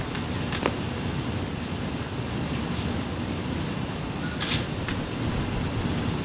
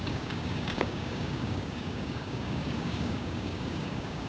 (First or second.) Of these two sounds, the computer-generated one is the second